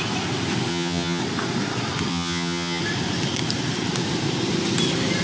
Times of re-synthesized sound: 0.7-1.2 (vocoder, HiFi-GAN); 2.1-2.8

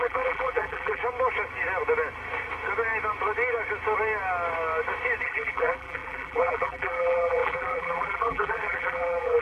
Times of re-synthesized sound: 0.0-1.0 (vocoder, BigVGAN v2); 5.2-9.4